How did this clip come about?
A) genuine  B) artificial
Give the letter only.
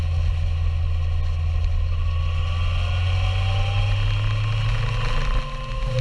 A